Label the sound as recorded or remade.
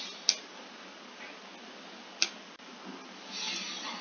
recorded